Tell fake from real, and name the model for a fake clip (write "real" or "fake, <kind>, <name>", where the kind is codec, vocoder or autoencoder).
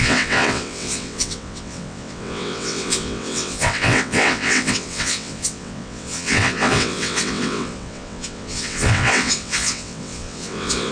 fake, vocoder, WaveNeXt